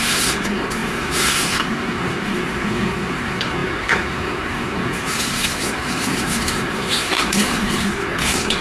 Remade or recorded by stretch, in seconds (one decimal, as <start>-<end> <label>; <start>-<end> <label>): 0.0-8.6 remade